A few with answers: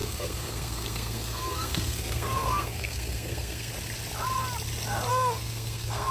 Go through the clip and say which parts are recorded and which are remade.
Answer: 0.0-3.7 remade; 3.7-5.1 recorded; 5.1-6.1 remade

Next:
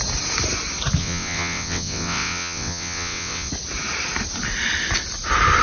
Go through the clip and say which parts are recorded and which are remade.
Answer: 0.0-1.0 recorded; 1.0-3.5 remade; 3.5-5.6 recorded

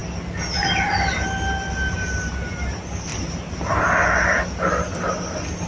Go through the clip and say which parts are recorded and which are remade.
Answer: 0.0-3.1 recorded; 3.1-3.8 remade; 3.8-5.7 recorded

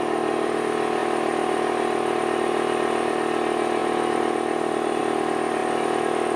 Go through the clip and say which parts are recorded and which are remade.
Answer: 0.0-6.4 recorded

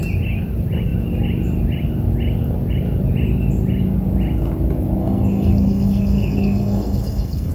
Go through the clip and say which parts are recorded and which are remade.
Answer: 0.0-5.0 recorded; 5.0-7.5 remade

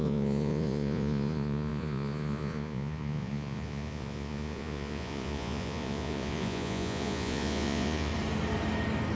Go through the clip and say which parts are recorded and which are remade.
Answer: 0.0-8.1 remade; 8.1-9.2 recorded

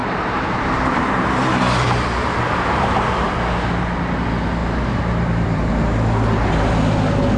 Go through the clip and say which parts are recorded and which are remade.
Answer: 0.0-3.3 remade; 3.3-4.6 recorded; 4.6-5.7 remade; 5.7-7.4 recorded